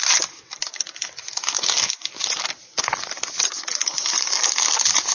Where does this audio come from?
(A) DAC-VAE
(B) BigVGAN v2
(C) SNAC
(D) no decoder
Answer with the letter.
D